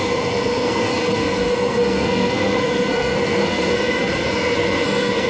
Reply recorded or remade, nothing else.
remade